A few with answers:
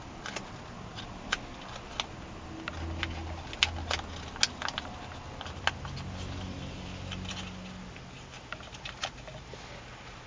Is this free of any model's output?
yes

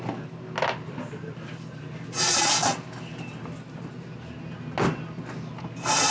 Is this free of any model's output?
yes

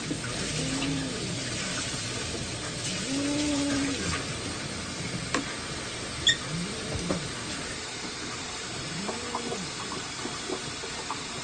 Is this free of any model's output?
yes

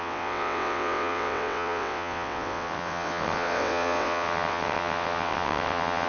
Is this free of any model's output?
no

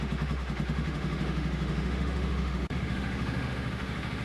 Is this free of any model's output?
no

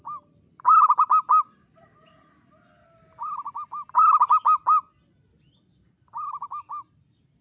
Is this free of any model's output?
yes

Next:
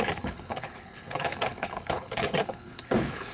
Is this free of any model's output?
no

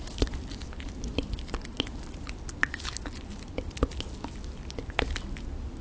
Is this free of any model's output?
yes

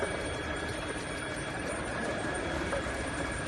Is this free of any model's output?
no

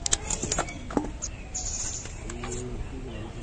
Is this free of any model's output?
yes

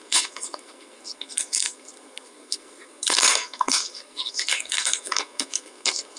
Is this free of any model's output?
no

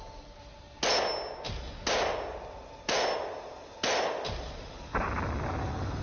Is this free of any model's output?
yes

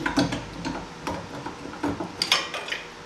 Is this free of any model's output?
yes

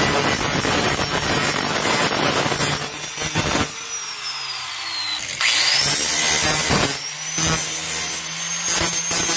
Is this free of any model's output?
yes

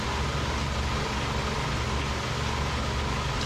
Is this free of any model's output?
yes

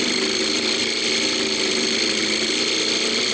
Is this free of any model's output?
yes